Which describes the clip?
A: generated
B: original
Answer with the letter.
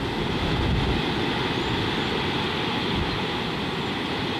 B